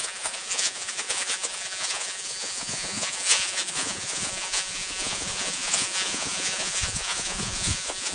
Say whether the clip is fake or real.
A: fake